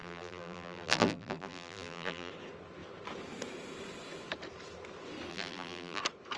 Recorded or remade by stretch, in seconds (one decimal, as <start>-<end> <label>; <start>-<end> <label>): 0.0-2.3 remade; 2.3-5.3 recorded; 5.3-6.0 remade; 6.0-6.4 recorded